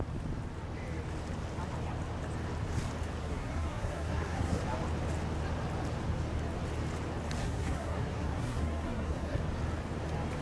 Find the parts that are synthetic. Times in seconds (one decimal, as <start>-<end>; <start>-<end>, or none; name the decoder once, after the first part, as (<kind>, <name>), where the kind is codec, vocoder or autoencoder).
3.2-4.6 (codec, SNAC); 7.4-9.4

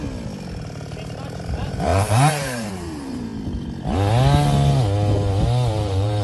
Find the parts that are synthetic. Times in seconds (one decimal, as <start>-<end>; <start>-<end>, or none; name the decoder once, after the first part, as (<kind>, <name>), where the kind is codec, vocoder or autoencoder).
1.4-3.3 (vocoder, BigVGAN v2); 5.7-6.2

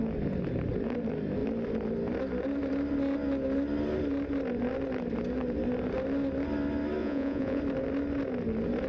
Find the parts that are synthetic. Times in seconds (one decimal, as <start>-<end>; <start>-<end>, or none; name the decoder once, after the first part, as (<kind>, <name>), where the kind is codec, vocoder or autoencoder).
7.0-7.6 (vocoder, Vocos)

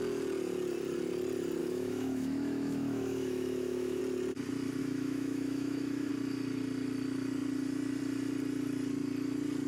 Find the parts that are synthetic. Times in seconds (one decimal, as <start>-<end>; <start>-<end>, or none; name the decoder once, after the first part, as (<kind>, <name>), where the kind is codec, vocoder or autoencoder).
1.6-4.0 (autoencoder, DAC-VAE); 4.8-6.1

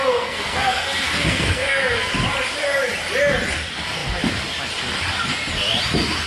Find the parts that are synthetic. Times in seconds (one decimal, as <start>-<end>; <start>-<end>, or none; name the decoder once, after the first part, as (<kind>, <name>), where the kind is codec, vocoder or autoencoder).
0.0-2.1 (codec, SNAC)